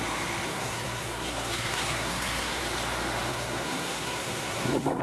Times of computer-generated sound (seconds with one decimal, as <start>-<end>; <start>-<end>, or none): 0.5-2.6; 3.3-5.0